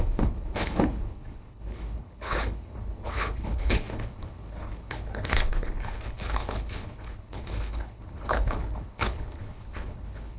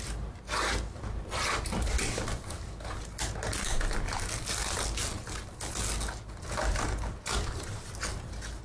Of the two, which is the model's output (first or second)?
first